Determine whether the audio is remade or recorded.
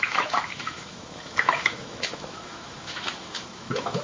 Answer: remade